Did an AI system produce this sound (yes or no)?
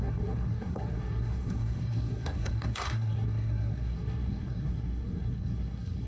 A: yes